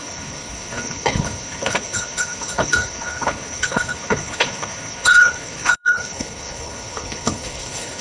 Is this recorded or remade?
remade